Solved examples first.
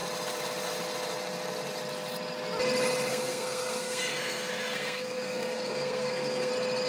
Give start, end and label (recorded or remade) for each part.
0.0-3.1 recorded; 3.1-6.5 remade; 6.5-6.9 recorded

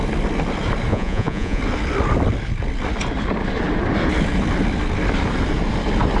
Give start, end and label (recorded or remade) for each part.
0.0-0.9 recorded; 0.9-1.6 remade; 1.6-6.2 recorded

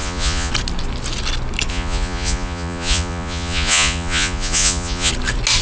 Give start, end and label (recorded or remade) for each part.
0.0-0.5 remade; 0.5-1.7 recorded; 1.7-5.1 remade; 5.1-5.6 recorded

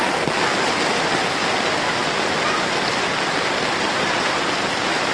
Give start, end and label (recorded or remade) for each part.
0.0-5.1 recorded

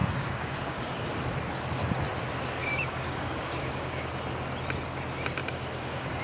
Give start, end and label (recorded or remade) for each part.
0.0-1.1 remade; 1.1-2.6 recorded; 2.6-4.1 remade; 4.1-5.4 recorded; 5.4-6.2 remade

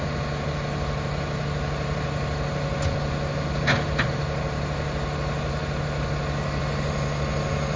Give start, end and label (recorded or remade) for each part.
0.0-7.8 recorded